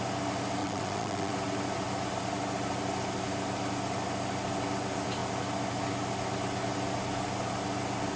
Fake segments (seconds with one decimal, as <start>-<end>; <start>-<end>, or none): 0.6-1.3